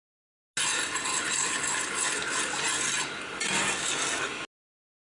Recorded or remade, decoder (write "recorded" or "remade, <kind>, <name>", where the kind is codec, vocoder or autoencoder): recorded